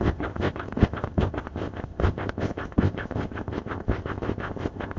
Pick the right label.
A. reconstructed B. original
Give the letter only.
A